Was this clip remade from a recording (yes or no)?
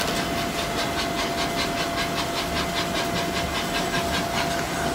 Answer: no